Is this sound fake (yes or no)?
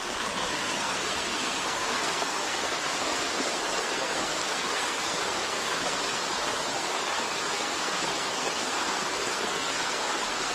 yes